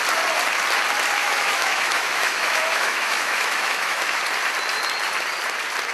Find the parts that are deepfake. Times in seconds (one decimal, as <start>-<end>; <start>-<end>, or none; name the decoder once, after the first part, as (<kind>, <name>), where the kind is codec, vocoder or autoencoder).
1.2-4.2 (autoencoder, DAC-VAE)